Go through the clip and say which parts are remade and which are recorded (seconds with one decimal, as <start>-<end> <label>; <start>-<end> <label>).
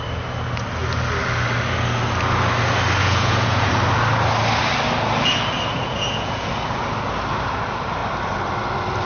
0.0-3.0 recorded; 3.0-3.7 remade; 3.7-5.8 recorded; 5.8-6.5 remade; 6.5-9.0 recorded